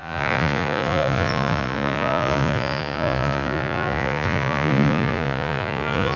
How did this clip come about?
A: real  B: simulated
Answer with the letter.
B